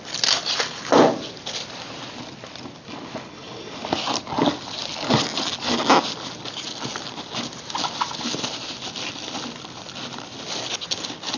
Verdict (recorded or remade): recorded